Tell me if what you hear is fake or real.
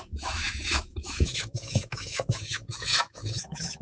fake